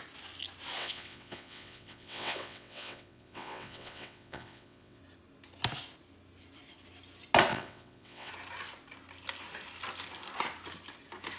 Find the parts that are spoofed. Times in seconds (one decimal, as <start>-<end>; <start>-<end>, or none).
0.8-5.0; 7.5-8.3